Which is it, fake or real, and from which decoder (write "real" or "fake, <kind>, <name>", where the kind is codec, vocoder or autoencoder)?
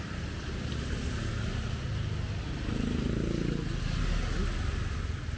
real